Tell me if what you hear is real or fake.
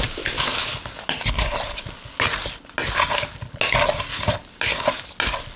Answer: real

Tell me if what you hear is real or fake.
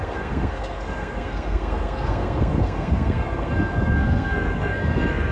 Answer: fake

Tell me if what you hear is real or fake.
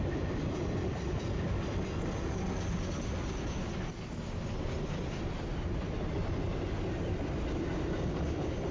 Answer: real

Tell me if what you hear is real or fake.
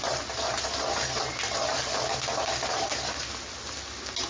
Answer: real